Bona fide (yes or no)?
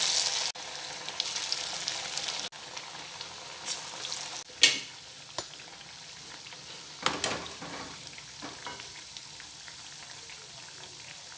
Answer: yes